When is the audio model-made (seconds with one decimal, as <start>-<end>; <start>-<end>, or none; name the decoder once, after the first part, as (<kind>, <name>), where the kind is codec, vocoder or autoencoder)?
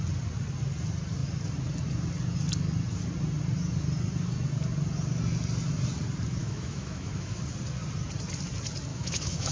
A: 6.4-7.4 (autoencoder, DAC-VAE); 8.9-9.5